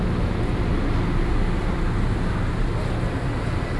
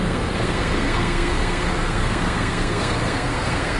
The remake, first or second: second